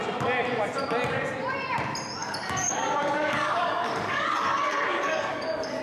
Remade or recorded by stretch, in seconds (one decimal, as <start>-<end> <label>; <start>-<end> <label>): 0.0-2.2 recorded; 2.2-5.8 remade